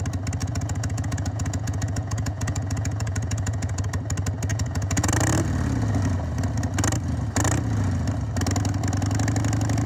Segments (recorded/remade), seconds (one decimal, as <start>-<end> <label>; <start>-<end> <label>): 0.0-0.4 recorded; 0.4-3.8 remade; 3.8-4.5 recorded; 4.5-5.1 remade; 5.1-9.9 recorded